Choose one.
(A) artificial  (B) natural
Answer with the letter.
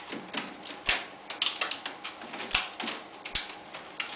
B